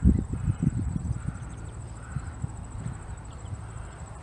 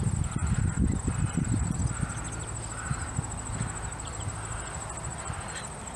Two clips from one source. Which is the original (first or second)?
second